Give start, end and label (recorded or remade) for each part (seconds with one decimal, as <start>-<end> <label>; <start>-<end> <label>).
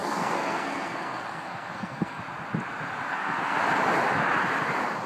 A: 0.0-2.2 remade; 2.2-3.1 recorded; 3.1-3.6 remade; 3.6-5.1 recorded